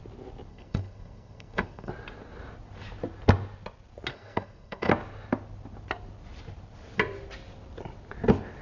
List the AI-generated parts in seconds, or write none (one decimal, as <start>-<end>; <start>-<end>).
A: 0.5-1.9; 4.1-4.9